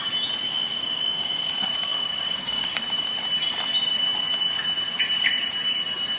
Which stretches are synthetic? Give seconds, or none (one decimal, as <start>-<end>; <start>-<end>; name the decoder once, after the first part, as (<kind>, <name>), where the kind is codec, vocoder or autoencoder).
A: 0.6-1.4 (codec, DAC); 1.9-2.8